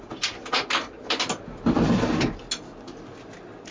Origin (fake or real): real